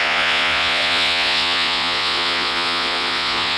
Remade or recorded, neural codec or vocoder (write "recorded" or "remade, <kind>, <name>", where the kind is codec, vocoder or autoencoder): remade, vocoder, Vocos